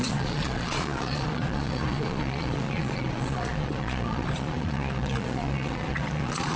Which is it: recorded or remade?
remade